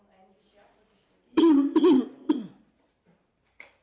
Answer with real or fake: real